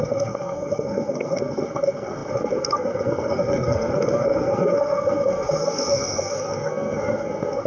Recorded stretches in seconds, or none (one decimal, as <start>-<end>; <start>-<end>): none